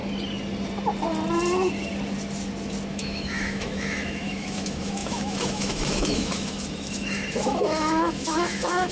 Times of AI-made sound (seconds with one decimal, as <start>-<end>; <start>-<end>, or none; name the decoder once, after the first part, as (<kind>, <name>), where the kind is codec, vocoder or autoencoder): 2.9-8.9 (autoencoder, DAC-VAE)